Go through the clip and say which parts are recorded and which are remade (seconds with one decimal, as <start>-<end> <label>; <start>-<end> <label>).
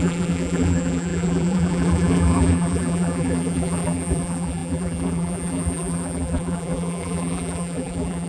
0.0-8.3 remade